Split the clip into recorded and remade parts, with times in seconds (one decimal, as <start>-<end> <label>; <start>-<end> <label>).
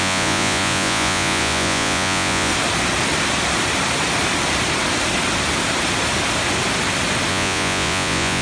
0.0-2.5 remade; 2.5-7.3 recorded; 7.3-8.4 remade